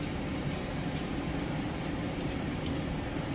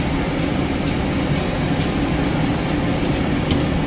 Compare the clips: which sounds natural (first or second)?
second